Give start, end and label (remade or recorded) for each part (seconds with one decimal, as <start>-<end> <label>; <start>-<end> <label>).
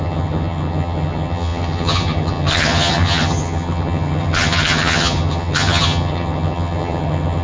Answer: 0.0-7.4 remade